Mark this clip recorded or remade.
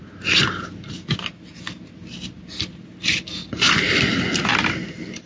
recorded